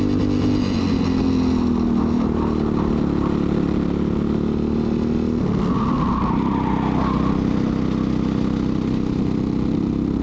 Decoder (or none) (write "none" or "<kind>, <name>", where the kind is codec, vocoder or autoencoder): none